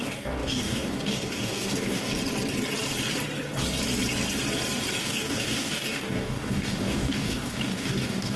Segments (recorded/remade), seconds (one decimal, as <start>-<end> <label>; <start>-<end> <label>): 0.0-2.1 remade; 2.1-5.0 recorded; 5.0-8.4 remade